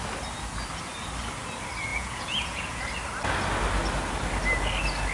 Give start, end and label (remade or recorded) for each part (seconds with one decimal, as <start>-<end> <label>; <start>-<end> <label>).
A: 0.0-1.9 recorded; 1.9-2.8 remade; 2.8-5.1 recorded